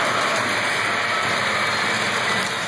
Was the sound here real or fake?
real